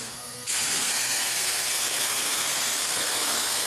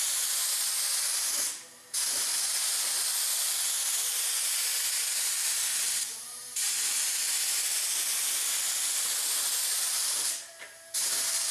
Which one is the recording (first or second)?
second